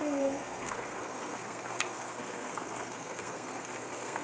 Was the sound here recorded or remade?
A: remade